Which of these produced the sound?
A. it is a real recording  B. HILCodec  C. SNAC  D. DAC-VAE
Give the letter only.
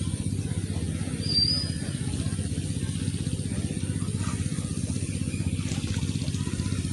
A